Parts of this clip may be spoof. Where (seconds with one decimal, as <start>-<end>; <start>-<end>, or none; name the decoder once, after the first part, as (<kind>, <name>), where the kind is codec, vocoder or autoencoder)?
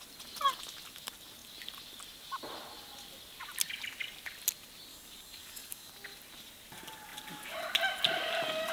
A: 4.9-5.9 (codec, DAC)